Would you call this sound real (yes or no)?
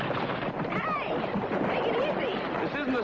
yes